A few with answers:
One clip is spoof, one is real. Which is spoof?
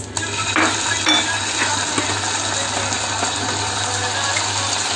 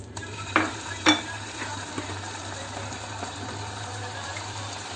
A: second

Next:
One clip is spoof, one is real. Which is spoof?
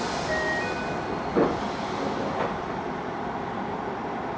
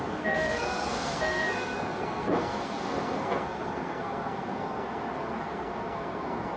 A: second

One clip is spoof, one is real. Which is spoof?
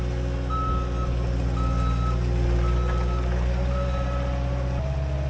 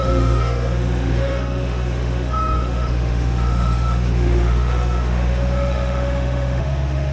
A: second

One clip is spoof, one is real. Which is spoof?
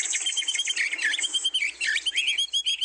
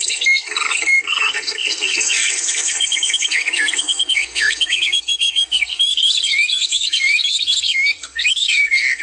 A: second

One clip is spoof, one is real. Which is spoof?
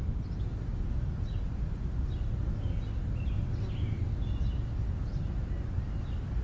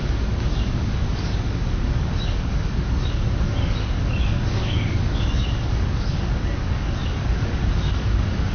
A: second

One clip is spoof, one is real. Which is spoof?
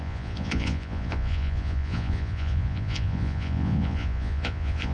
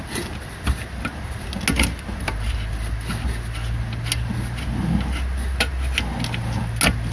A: first